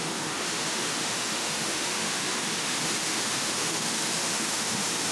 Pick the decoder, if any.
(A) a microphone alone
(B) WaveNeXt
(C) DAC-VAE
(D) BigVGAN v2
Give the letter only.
C